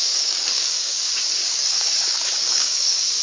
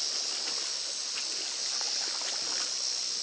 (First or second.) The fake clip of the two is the first